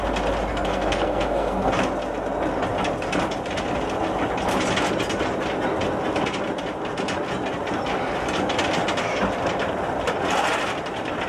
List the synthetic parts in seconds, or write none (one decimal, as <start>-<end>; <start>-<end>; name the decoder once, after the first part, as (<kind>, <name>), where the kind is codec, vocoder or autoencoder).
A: 0.5-1.7 (codec, SNAC)